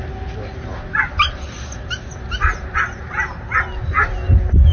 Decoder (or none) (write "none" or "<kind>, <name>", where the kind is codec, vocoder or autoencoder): none